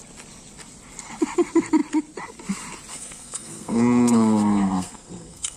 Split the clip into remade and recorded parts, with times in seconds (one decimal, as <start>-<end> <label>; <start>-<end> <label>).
0.0-2.9 recorded; 2.9-5.6 remade